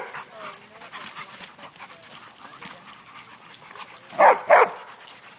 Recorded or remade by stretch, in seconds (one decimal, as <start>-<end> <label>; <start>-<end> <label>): 0.0-5.4 recorded